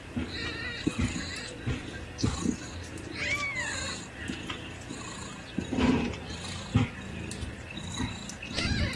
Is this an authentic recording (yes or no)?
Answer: yes